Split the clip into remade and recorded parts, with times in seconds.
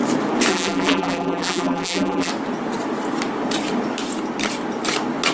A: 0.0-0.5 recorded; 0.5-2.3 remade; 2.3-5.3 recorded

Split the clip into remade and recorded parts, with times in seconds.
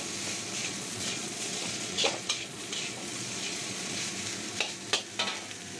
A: 0.0-0.6 recorded; 0.6-4.1 remade; 4.1-5.8 recorded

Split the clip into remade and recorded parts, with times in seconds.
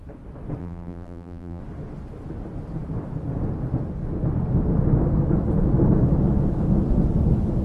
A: 0.0-0.6 recorded; 0.6-1.6 remade; 1.6-7.6 recorded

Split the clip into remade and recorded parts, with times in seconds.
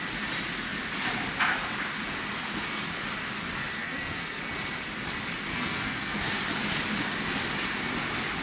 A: 0.0-3.8 recorded; 3.8-4.4 remade; 4.4-5.5 recorded; 5.5-6.3 remade; 6.3-8.4 recorded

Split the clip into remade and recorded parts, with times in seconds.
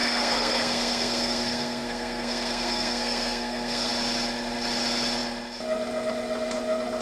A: 0.0-3.9 remade; 3.9-7.0 recorded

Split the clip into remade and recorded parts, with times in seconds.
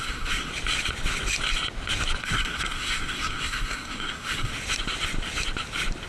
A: 0.0-0.5 remade; 0.5-2.2 recorded; 2.2-4.5 remade; 4.5-6.1 recorded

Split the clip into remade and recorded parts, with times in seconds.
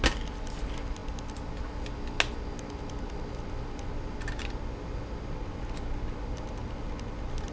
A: 0.0-7.5 recorded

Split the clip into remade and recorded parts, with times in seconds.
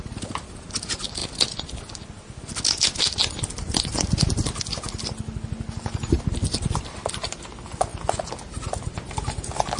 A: 0.0-9.8 recorded